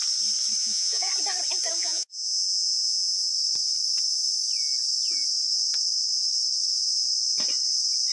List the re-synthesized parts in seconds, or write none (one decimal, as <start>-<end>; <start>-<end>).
0.6-1.1; 1.8-3.3